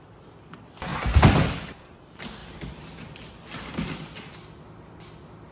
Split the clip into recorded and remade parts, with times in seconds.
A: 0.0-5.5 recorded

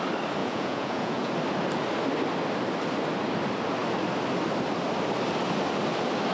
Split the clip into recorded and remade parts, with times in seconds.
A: 0.0-0.4 recorded; 0.4-1.3 remade; 1.3-6.3 recorded

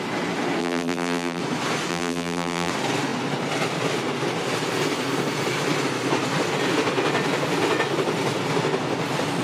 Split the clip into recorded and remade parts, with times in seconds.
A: 0.0-0.6 recorded; 0.6-1.4 remade; 1.4-1.9 recorded; 1.9-2.7 remade; 2.7-9.4 recorded

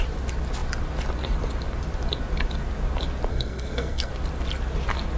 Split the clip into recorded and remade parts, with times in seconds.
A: 0.0-3.3 recorded; 3.3-4.1 remade; 4.1-5.2 recorded

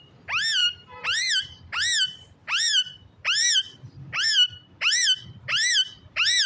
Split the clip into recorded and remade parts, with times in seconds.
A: 0.0-0.6 recorded; 0.6-1.7 remade; 1.7-2.4 recorded; 2.4-6.5 remade

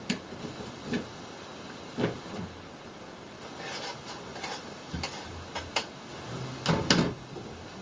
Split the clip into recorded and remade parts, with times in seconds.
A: 0.0-4.3 recorded; 4.3-5.3 remade; 5.3-7.8 recorded